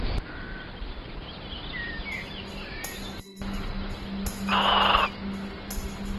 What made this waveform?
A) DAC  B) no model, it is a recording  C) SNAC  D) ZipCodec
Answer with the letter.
B